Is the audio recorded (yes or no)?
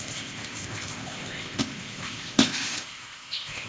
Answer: no